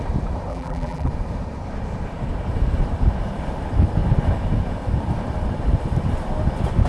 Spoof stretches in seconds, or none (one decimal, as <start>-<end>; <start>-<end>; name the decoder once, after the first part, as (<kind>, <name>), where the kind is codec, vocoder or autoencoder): 0.5-1.1 (vocoder, BigVGAN v2)